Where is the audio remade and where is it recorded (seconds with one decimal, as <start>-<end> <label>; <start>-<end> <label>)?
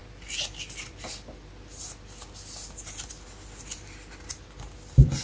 0.0-5.2 recorded